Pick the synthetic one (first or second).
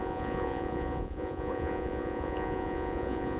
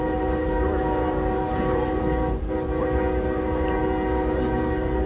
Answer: first